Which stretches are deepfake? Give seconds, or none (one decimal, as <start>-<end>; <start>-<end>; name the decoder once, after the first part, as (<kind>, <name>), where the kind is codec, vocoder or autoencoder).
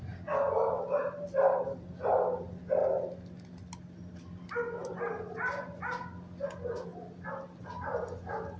none